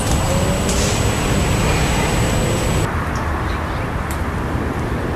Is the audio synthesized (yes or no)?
no